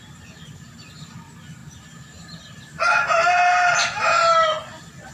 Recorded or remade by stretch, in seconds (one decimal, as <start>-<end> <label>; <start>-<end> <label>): 0.0-5.1 recorded